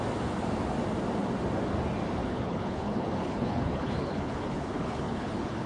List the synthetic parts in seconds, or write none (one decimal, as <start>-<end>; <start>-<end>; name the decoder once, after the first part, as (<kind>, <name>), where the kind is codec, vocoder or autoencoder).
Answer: 2.2-5.7 (codec, HILCodec)